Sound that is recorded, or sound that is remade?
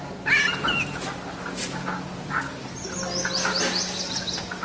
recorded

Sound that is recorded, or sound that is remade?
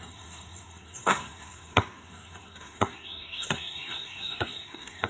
remade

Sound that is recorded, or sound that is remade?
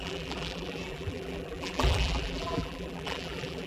remade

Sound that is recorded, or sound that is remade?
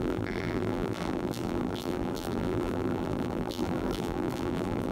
remade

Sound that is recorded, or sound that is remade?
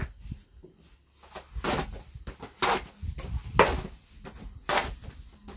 recorded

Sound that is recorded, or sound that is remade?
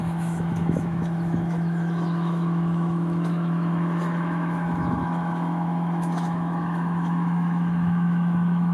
remade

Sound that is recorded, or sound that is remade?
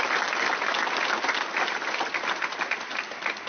recorded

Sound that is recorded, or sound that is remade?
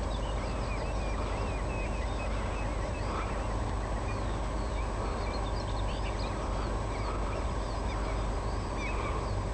recorded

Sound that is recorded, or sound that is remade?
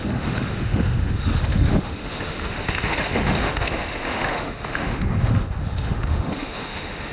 remade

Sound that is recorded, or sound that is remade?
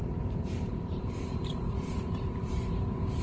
remade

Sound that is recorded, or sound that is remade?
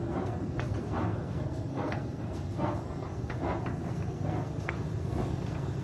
remade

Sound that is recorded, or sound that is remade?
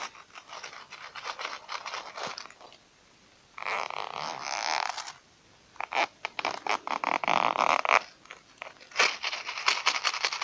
recorded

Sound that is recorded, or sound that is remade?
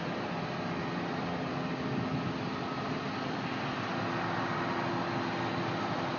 recorded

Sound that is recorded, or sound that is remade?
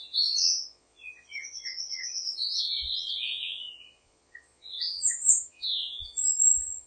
remade